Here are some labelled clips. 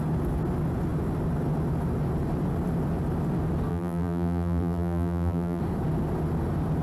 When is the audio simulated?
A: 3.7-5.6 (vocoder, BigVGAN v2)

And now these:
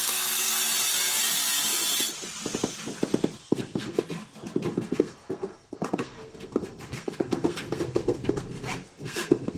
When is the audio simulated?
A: 0.0-0.6 (codec, SNAC); 3.4-4.0; 4.7-9.6

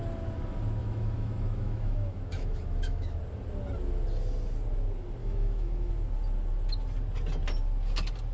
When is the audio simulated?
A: 0.8-3.2 (autoencoder, DAC-VAE); 5.2-5.9

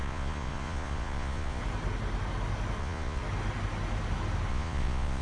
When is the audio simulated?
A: 0.0-1.6 (vocoder, Vocos); 2.8-3.2; 4.5-5.2

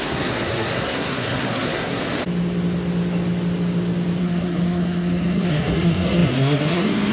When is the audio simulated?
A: 0.0-2.0 (codec, SNAC); 4.2-7.1

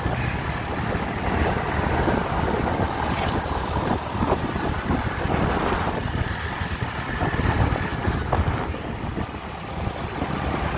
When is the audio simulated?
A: none

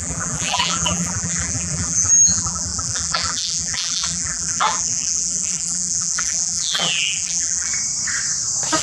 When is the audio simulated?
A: 0.0-7.7 (vocoder, BigVGAN v2)